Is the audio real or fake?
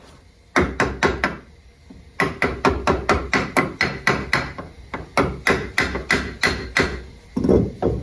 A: real